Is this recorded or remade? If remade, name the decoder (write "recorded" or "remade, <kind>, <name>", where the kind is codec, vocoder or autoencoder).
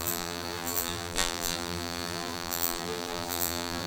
remade, vocoder, BigVGAN v2